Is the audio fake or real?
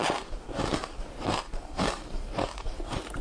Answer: fake